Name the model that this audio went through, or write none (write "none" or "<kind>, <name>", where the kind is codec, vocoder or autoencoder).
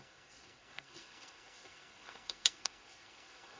codec, SNAC